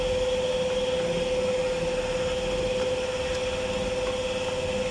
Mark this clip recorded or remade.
recorded